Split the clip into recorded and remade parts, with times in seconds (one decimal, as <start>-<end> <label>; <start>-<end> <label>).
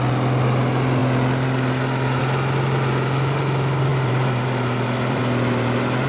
0.0-3.9 recorded; 3.9-5.2 remade; 5.2-6.1 recorded